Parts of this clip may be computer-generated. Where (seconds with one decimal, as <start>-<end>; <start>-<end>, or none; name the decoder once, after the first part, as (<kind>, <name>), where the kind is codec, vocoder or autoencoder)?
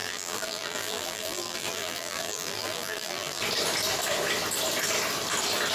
0.0-3.4 (vocoder, BigVGAN v2)